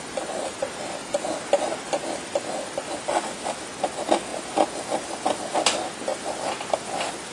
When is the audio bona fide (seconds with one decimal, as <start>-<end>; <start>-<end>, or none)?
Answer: 0.0-7.3